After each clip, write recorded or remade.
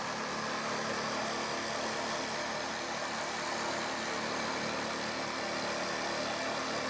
recorded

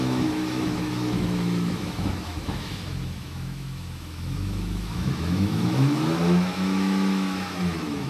remade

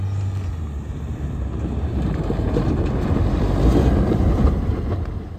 recorded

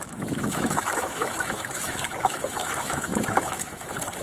remade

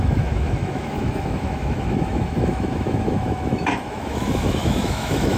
remade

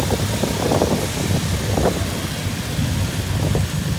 recorded